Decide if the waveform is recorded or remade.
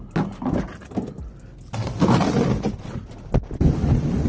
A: recorded